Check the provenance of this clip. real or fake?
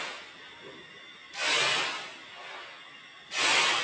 real